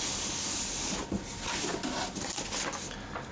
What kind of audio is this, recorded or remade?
recorded